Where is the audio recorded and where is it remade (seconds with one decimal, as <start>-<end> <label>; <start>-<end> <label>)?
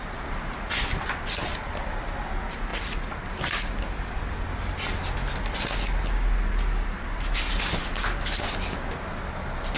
0.0-9.8 recorded